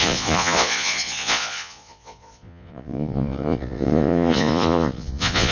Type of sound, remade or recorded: remade